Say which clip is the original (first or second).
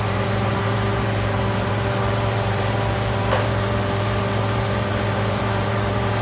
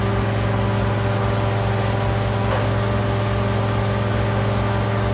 second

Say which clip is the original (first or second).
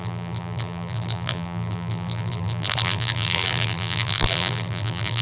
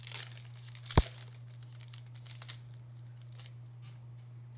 second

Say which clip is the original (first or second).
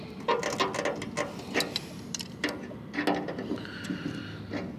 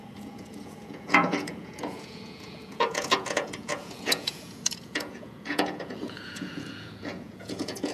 first